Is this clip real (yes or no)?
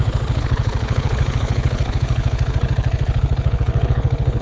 no